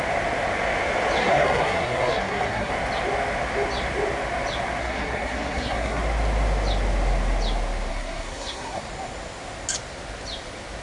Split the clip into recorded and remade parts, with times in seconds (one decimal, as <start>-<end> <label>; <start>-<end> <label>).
0.0-1.2 recorded; 1.2-2.7 remade; 2.7-4.8 recorded; 4.8-6.0 remade; 6.0-7.9 recorded; 7.9-8.8 remade; 8.8-10.8 recorded